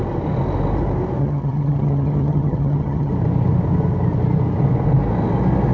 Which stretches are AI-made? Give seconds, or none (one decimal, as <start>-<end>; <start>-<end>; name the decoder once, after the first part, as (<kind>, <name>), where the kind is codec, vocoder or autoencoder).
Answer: 1.2-3.1 (vocoder, HiFi-GAN)